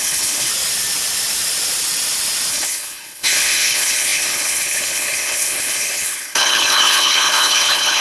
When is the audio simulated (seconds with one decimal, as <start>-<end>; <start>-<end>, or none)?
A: 0.0-0.5; 2.5-8.0